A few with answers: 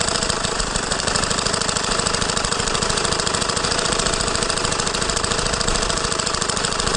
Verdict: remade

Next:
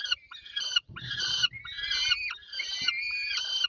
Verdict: remade